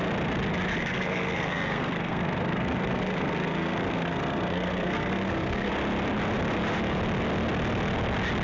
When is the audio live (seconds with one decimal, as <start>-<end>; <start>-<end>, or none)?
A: 0.0-0.8; 5.7-8.4